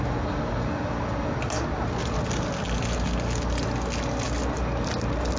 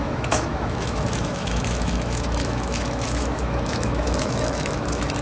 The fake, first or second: second